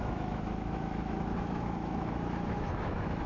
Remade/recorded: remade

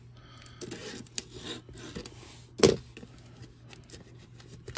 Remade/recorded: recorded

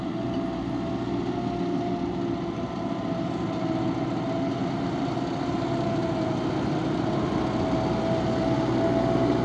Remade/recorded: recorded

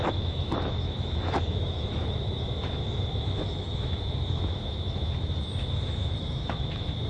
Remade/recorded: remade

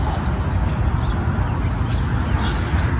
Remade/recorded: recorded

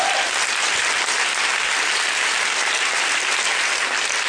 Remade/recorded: recorded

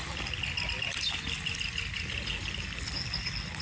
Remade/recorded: recorded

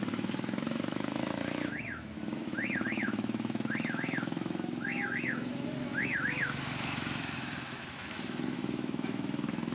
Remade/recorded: remade